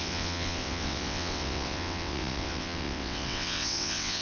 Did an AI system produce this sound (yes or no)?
yes